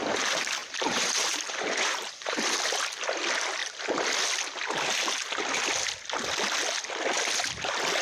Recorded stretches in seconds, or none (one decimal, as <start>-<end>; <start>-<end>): 0.0-0.6; 2.1-8.0